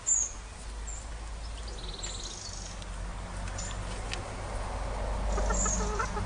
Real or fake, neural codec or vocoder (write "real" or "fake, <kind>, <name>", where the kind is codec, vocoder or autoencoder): real